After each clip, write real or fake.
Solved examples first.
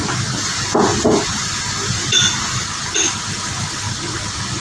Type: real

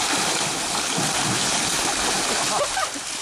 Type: real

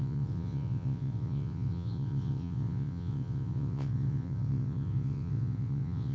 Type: fake